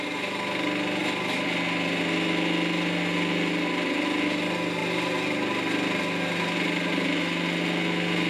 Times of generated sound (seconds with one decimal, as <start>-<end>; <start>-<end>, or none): none